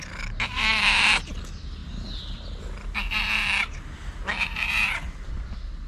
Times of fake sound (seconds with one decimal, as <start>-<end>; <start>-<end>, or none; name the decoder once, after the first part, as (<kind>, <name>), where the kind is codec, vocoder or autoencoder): none